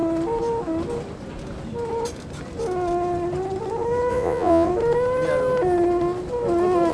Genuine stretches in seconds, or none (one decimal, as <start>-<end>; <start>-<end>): 0.0-4.1; 4.7-6.9